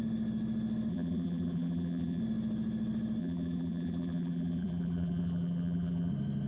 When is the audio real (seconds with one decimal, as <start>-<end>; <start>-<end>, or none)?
0.0-0.9; 2.2-3.2; 6.1-6.5